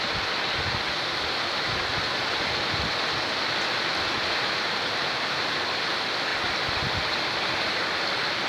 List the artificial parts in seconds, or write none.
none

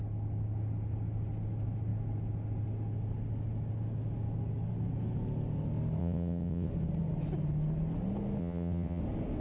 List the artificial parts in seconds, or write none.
6.0-6.7 (vocoder, WaveNeXt); 8.4-9.0

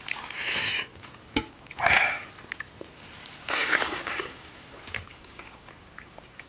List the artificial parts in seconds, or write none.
3.6-4.5 (codec, DAC); 5.1-5.7

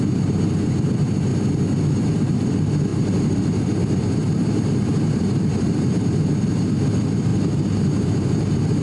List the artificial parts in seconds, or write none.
0.0-1.3 (vocoder, BigVGAN v2); 1.9-8.8

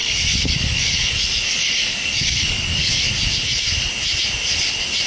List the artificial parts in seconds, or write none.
0.0-3.1 (codec, DAC)

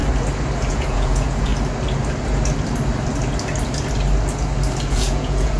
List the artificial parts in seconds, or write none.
0.7-1.5 (vocoder, Vocos); 4.9-5.6